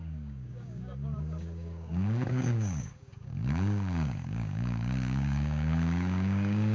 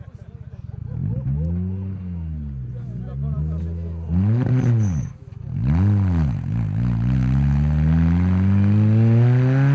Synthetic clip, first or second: first